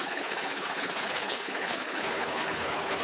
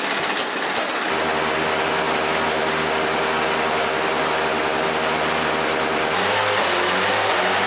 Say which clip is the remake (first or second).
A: first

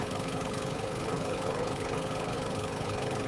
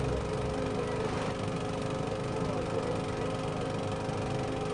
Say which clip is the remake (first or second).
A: first